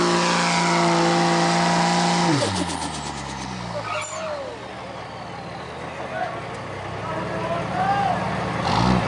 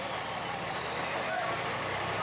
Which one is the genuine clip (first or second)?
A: first